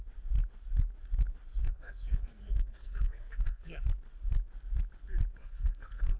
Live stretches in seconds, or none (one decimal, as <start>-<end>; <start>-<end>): 0.0-1.6; 3.8-5.4